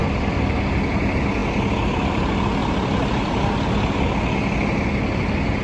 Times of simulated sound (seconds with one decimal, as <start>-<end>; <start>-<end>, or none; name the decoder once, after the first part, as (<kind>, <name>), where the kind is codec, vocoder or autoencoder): 0.0-0.9 (vocoder, BigVGAN v2); 2.6-3.4